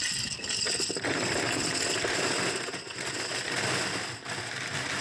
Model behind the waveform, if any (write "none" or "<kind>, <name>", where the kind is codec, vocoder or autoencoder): none